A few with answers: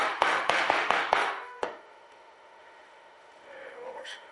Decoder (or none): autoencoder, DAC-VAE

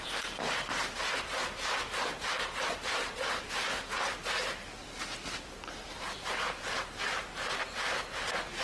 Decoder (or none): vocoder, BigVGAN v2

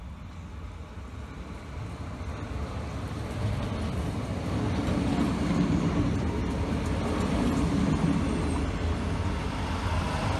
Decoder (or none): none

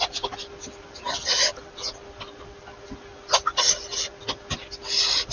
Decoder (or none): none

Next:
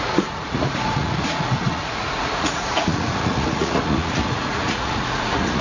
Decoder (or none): vocoder, Vocos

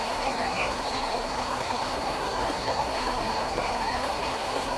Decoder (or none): codec, SNAC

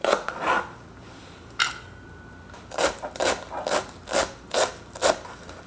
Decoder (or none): none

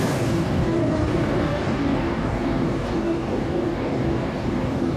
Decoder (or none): codec, DAC